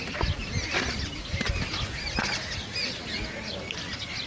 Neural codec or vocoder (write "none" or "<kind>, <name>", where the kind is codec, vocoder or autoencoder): none